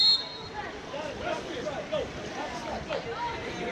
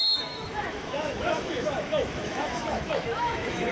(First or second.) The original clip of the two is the first